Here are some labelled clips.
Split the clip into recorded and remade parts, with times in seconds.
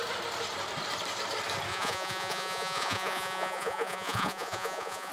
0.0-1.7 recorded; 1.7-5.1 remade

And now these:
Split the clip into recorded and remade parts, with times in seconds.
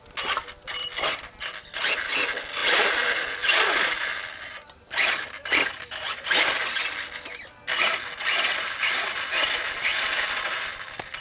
0.0-11.2 recorded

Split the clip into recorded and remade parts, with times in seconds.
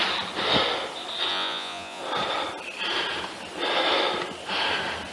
0.0-1.3 recorded; 1.3-2.0 remade; 2.0-5.1 recorded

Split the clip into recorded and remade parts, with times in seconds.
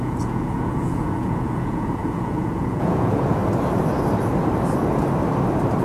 0.0-3.4 remade; 3.4-5.8 recorded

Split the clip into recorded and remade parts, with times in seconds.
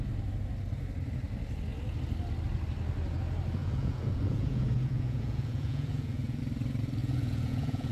0.0-3.6 recorded; 3.6-6.4 remade; 6.4-7.0 recorded; 7.0-7.9 remade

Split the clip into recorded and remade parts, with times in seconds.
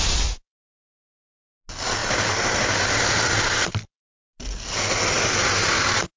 0.0-6.2 recorded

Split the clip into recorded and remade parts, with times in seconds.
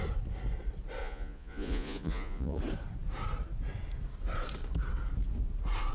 0.0-1.0 recorded; 1.0-2.6 remade; 2.6-5.9 recorded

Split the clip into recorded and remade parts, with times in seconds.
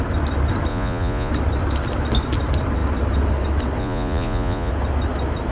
0.0-0.7 recorded; 0.7-1.3 remade; 1.3-3.8 recorded; 3.8-4.7 remade; 4.7-5.5 recorded